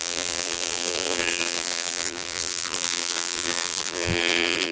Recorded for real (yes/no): no